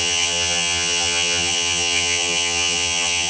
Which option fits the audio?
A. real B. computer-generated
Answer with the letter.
B